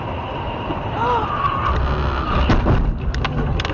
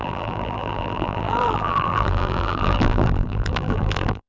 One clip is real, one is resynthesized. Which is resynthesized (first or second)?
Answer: second